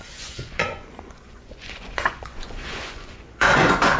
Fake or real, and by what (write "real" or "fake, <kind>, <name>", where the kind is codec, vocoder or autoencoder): fake, vocoder, Vocos